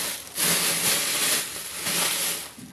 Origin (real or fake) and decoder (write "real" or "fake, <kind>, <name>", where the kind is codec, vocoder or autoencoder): real